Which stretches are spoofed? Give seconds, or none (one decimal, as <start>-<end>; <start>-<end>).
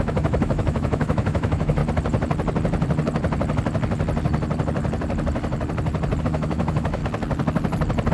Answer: 0.0-1.8; 6.2-7.0